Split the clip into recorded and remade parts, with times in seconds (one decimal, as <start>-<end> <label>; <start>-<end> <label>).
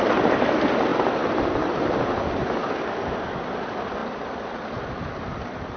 0.0-5.8 recorded